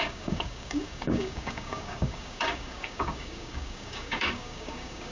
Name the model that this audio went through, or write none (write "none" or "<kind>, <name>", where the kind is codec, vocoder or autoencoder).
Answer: codec, DAC